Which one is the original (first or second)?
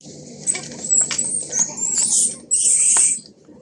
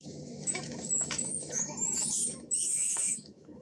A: first